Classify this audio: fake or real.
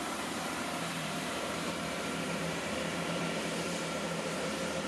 fake